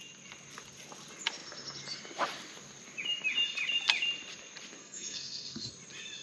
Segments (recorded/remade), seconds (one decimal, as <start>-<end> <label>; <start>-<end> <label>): 0.0-4.8 recorded; 4.8-5.7 remade; 5.7-6.2 recorded

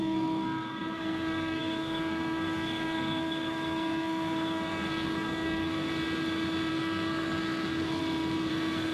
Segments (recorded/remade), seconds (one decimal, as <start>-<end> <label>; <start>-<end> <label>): 0.0-5.9 remade; 5.9-6.7 recorded; 6.7-8.0 remade; 8.0-8.5 recorded; 8.5-8.9 remade